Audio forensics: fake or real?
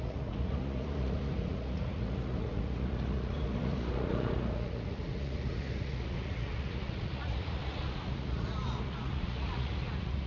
fake